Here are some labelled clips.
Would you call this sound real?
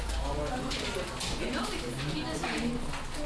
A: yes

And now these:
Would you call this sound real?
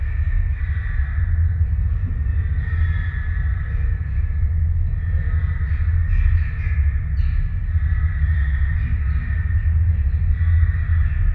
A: yes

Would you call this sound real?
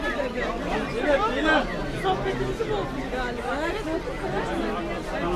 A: yes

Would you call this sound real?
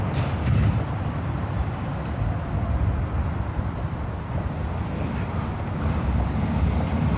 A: yes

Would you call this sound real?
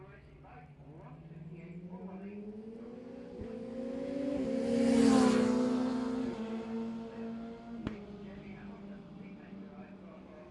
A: yes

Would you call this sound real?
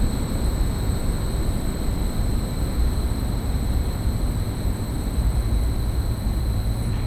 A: no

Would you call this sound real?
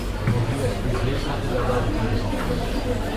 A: yes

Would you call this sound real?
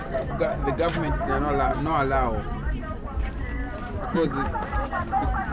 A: yes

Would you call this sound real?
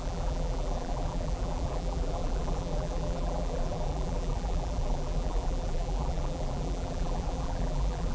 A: no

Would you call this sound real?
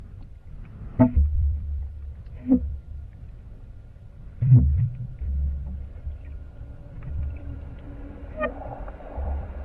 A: no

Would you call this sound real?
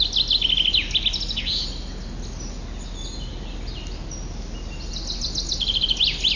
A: yes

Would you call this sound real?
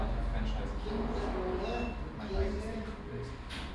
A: yes